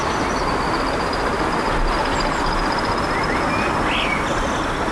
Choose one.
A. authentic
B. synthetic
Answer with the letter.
A